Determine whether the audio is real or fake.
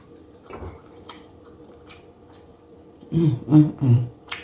fake